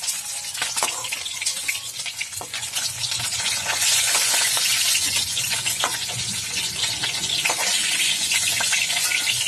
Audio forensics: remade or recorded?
remade